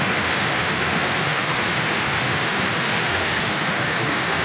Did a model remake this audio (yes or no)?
yes